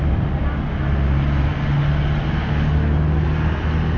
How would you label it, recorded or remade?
recorded